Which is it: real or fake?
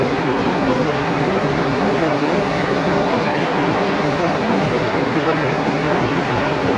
fake